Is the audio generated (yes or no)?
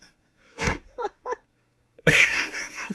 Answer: yes